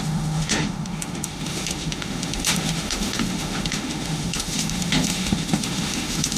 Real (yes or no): no